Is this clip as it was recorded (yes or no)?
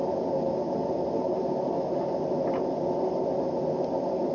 yes